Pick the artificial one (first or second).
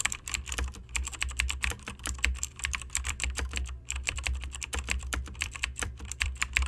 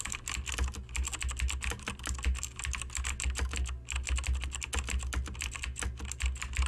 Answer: first